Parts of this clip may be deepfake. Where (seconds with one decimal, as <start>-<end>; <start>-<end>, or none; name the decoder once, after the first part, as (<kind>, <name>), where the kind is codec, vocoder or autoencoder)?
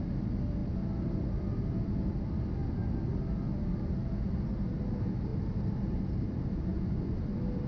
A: 6.7-7.2 (vocoder, Vocos)